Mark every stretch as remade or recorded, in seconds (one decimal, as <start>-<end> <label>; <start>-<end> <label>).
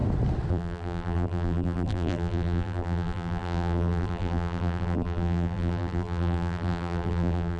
0.0-0.5 recorded; 0.5-7.6 remade